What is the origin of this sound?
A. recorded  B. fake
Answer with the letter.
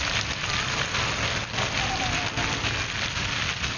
A